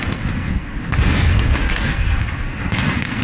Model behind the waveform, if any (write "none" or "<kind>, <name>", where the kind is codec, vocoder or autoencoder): codec, SNAC